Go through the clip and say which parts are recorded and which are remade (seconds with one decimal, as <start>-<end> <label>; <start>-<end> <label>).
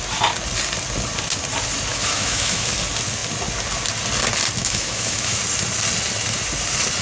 0.0-1.9 recorded; 1.9-2.7 remade; 2.7-4.6 recorded; 4.6-5.4 remade; 5.4-7.0 recorded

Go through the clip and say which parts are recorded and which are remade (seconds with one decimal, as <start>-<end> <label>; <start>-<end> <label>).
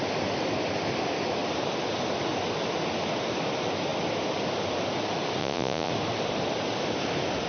0.0-5.4 recorded; 5.4-5.9 remade; 5.9-7.5 recorded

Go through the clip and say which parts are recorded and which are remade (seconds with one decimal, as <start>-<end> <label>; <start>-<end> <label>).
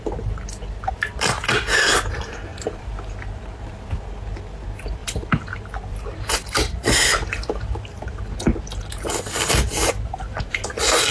0.0-2.5 recorded; 2.5-3.7 remade; 3.7-5.0 recorded; 5.0-8.2 remade; 8.2-9.8 recorded; 9.8-10.7 remade; 10.7-11.1 recorded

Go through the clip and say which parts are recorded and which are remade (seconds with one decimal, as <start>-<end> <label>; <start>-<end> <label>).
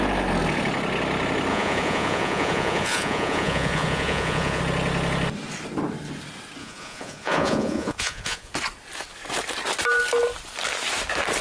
0.0-1.5 recorded; 1.5-4.6 remade; 4.6-6.6 recorded; 6.6-8.5 remade; 8.5-11.4 recorded